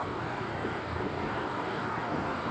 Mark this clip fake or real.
fake